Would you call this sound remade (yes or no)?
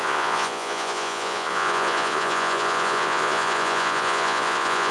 yes